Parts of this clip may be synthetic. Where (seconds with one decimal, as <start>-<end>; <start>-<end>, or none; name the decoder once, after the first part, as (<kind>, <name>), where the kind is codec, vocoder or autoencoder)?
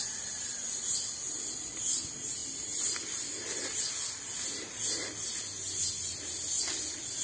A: none